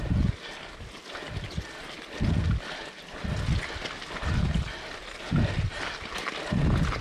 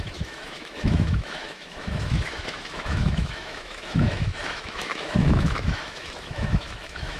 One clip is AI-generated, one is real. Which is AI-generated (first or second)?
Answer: second